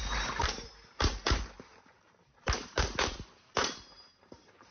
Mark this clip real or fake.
fake